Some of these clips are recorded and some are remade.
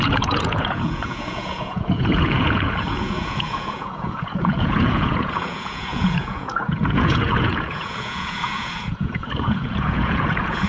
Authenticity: remade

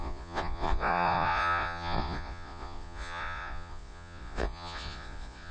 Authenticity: remade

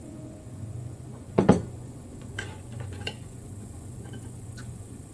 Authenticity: remade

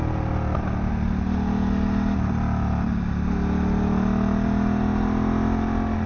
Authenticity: recorded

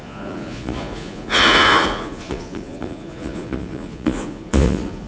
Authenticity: remade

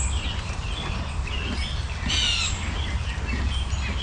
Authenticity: recorded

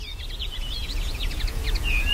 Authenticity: remade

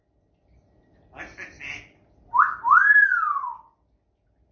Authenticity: recorded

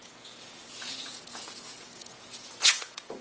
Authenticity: remade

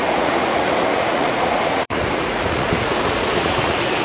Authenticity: remade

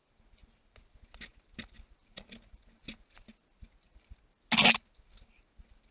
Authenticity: recorded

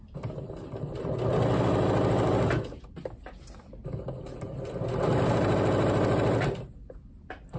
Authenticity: recorded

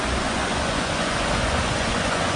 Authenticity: remade